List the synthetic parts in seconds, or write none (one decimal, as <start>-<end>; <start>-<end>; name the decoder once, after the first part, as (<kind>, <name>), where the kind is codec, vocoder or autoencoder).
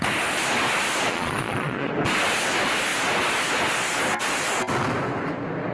1.1-1.9 (vocoder, Vocos)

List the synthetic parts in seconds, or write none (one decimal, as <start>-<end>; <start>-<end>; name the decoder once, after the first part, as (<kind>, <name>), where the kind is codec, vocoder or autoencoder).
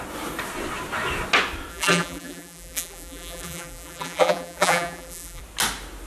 1.7-5.4 (vocoder, BigVGAN v2)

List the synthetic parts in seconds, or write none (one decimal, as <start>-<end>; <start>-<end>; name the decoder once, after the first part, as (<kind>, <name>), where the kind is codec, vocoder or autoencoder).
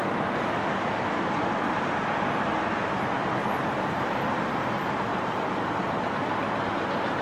3.4-4.1 (vocoder, BigVGAN v2); 5.1-5.9